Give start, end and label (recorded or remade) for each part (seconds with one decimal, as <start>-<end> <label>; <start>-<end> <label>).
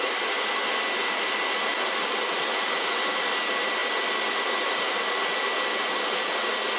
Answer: 0.0-6.8 recorded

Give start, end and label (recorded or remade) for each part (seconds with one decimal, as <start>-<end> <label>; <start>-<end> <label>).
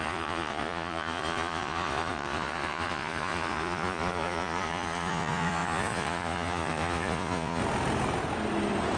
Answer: 0.0-7.6 remade; 7.6-9.0 recorded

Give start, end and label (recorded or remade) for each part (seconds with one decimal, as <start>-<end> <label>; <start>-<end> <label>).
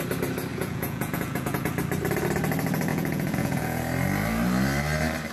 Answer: 0.0-0.5 recorded; 0.5-1.7 remade; 1.7-2.9 recorded; 2.9-3.8 remade; 3.8-5.3 recorded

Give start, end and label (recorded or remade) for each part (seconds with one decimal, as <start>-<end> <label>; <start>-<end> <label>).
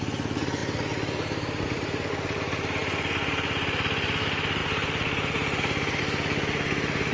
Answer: 0.0-0.6 recorded; 0.6-2.1 remade; 2.1-4.6 recorded; 4.6-6.0 remade; 6.0-7.1 recorded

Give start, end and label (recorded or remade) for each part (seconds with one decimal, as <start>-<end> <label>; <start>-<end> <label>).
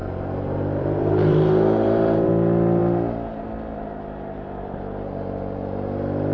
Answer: 0.0-2.3 remade; 2.3-6.3 recorded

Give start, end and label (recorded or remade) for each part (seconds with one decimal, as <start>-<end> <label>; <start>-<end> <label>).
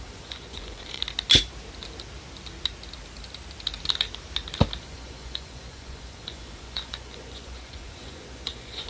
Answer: 0.0-1.0 remade; 1.0-4.8 recorded; 4.8-8.9 remade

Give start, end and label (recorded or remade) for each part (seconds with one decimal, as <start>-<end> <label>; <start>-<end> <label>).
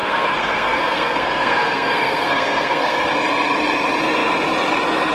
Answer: 0.0-3.1 remade; 3.1-5.1 recorded